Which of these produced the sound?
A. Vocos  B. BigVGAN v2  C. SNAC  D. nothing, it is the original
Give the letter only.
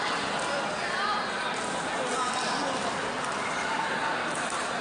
D